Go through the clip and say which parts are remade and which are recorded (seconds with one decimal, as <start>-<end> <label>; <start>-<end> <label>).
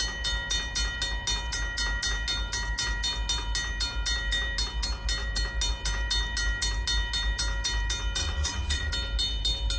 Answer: 0.0-8.2 recorded; 8.2-8.9 remade; 8.9-9.8 recorded